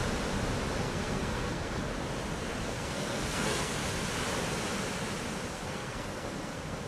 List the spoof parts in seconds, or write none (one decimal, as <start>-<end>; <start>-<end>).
0.8-1.9; 2.4-3.8; 5.5-6.9